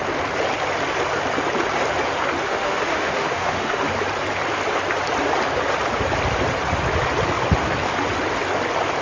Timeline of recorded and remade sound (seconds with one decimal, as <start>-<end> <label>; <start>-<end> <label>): 0.0-2.4 recorded; 2.4-3.9 remade; 3.9-9.0 recorded